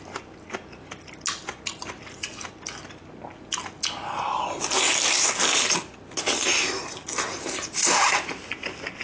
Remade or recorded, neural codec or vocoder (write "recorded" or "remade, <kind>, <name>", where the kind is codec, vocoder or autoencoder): recorded